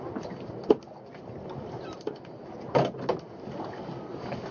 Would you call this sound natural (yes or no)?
yes